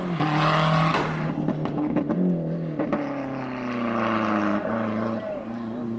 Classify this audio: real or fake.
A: real